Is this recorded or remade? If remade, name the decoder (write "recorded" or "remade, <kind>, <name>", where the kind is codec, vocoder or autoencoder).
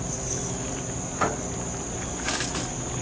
recorded